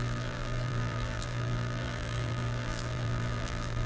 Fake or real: fake